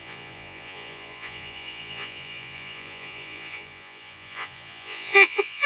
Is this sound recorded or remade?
remade